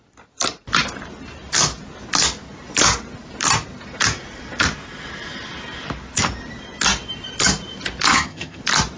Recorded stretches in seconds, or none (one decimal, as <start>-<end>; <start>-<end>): 0.0-8.1; 8.6-9.0